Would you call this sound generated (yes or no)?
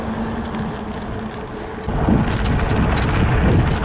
no